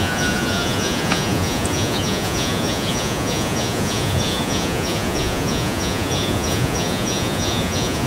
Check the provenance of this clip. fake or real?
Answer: fake